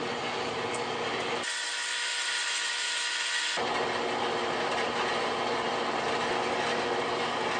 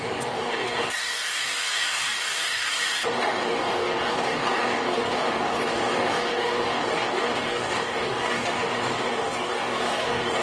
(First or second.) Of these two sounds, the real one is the first